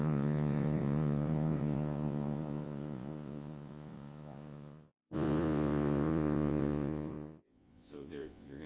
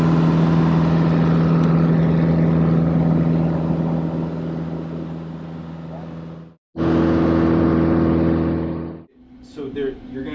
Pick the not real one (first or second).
first